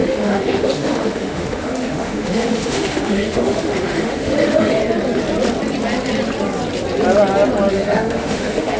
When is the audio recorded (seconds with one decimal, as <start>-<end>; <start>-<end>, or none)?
4.8-7.7